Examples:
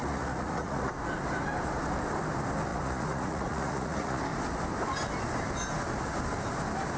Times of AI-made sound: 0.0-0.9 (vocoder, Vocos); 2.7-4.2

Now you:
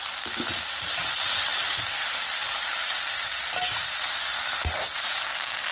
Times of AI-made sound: none

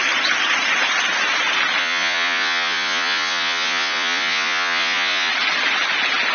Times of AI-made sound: 1.8-5.3 (vocoder, Vocos)

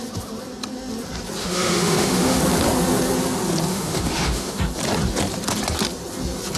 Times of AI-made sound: 1.4-2.4 (autoencoder, DAC-VAE); 3.7-4.6

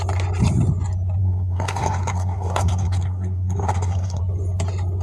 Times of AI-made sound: 1.2-4.2 (codec, SNAC)

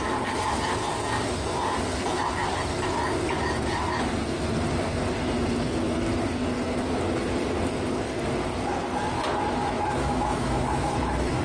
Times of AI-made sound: 9.6-10.9 (autoencoder, DAC-VAE)